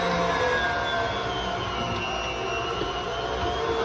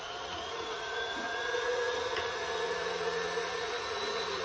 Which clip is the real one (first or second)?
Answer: first